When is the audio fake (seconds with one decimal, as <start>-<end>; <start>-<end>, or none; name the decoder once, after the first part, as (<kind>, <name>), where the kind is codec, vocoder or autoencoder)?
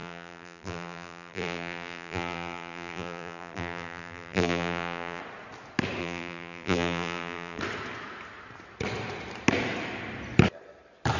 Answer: 0.0-5.2 (vocoder, BigVGAN v2); 6.0-7.6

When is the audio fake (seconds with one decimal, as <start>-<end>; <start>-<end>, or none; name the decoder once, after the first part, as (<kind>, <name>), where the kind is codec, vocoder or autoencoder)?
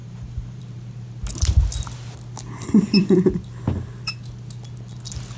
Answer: 0.0-0.6 (vocoder, BigVGAN v2)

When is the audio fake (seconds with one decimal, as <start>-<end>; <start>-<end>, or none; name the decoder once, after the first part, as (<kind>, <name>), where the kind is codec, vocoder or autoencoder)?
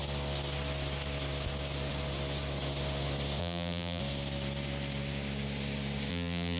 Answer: 3.4-4.0 (vocoder, BigVGAN v2); 6.1-6.6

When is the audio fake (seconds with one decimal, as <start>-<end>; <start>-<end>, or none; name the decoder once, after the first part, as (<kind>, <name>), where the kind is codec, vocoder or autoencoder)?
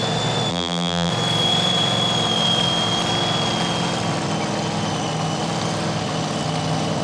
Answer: 0.5-1.1 (vocoder, BigVGAN v2)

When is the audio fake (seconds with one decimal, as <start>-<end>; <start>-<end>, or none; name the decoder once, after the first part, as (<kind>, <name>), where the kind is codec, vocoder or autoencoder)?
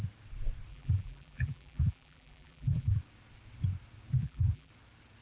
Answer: 0.7-3.0 (vocoder, BigVGAN v2); 4.2-4.7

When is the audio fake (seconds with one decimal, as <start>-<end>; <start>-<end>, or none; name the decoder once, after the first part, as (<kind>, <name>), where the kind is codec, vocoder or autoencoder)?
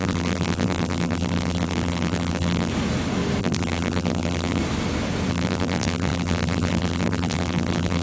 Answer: 0.0-2.7 (vocoder, BigVGAN v2); 3.4-4.6; 5.3-8.0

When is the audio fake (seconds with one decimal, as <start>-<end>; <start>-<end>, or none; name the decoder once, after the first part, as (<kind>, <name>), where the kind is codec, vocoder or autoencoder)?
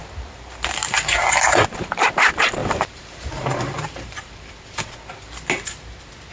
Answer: 0.0-1.2 (vocoder, BigVGAN v2); 2.6-4.5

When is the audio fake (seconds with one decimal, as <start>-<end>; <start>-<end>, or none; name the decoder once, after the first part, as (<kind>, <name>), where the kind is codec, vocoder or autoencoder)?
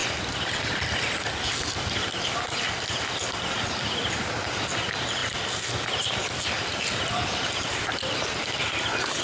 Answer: none